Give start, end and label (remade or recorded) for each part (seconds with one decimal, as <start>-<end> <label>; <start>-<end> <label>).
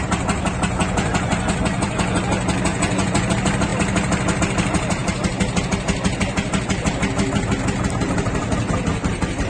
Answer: 0.0-0.8 recorded; 0.8-2.2 remade; 2.2-2.7 recorded; 2.7-3.3 remade; 3.3-9.5 recorded